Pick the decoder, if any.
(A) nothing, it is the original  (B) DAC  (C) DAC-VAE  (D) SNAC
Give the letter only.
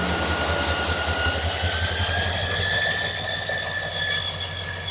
A